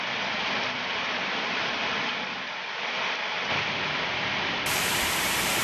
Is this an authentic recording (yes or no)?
no